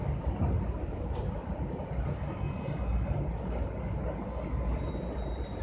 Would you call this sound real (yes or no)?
yes